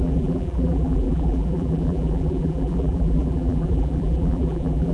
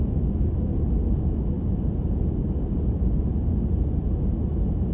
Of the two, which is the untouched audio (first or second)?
second